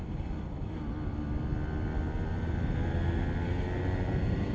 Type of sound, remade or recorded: recorded